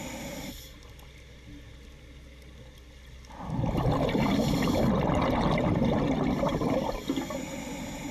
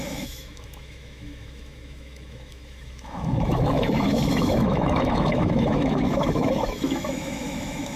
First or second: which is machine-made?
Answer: second